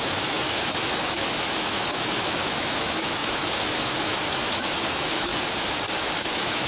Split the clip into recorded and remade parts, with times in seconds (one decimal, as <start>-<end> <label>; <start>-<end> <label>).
0.0-5.3 remade; 5.3-6.2 recorded; 6.2-6.7 remade